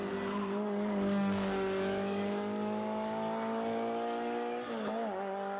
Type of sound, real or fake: fake